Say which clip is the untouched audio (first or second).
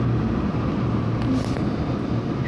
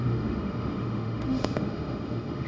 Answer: first